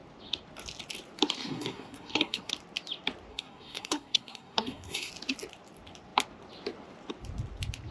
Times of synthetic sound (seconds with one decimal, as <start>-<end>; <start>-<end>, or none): 1.4-2.5; 3.3-5.1